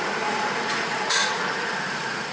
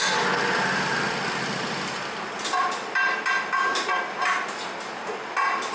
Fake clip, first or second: first